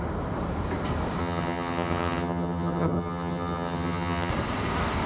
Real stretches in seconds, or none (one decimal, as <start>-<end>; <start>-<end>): 0.0-1.2; 4.3-5.1

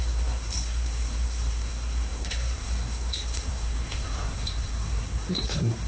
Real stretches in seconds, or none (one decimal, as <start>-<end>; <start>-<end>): none

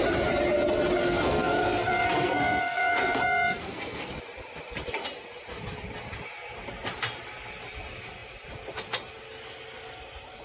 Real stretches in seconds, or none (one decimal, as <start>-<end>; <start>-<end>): 0.0-1.0; 4.1-10.4

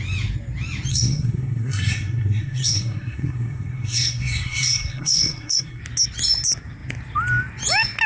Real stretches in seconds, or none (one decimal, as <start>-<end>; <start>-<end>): 0.0-0.9; 5.8-8.1